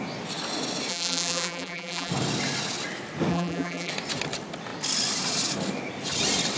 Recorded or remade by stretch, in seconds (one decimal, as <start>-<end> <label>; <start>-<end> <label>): 0.0-0.9 recorded; 0.9-2.1 remade; 2.1-3.3 recorded; 3.3-3.9 remade; 3.9-6.6 recorded